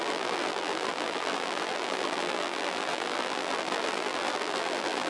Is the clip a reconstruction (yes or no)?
yes